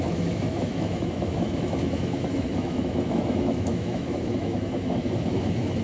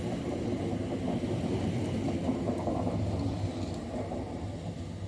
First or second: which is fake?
first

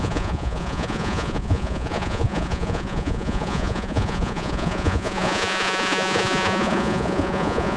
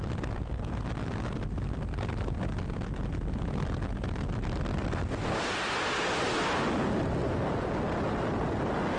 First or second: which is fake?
first